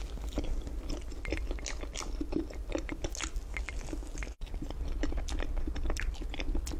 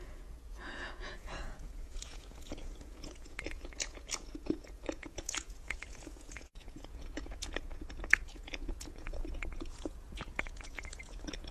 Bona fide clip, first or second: first